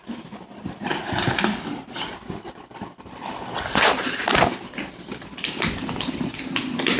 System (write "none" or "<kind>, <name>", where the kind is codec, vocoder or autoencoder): none